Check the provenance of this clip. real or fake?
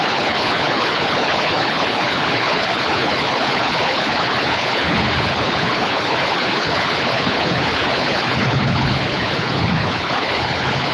fake